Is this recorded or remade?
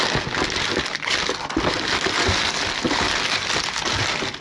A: recorded